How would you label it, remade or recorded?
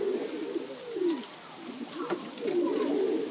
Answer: recorded